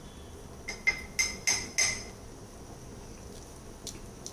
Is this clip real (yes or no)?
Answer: yes